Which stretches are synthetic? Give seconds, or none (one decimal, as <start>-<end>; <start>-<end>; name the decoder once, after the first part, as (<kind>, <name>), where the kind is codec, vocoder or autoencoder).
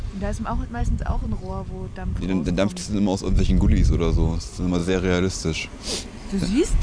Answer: 0.8-1.5 (vocoder, Vocos)